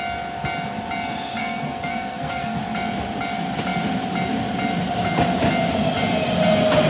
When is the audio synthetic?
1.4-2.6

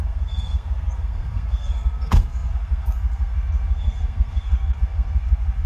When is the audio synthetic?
0.0-5.7

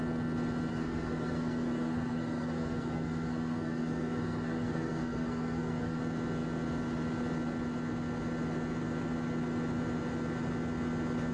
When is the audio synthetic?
0.7-6.0

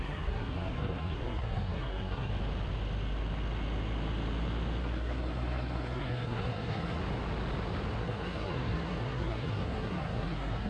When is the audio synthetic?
0.0-2.3; 4.8-7.0; 8.0-10.7

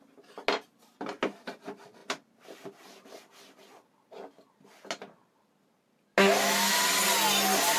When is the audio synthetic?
none

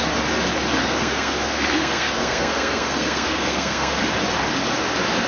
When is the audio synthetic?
0.8-4.0

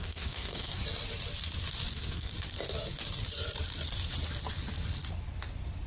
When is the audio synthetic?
0.0-0.8; 1.9-2.3